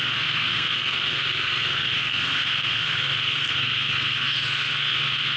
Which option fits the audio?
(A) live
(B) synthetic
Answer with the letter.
B